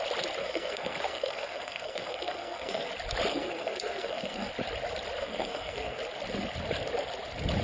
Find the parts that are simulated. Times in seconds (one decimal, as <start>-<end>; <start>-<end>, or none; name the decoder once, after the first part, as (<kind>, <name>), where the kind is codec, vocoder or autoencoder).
0.4-2.9 (codec, SNAC); 3.3-4.5; 5.2-6.0